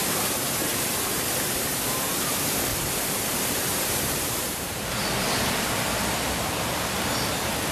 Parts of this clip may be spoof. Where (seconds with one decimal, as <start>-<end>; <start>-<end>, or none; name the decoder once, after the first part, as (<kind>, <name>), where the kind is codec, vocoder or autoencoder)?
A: 2.7-4.9 (vocoder, BigVGAN v2)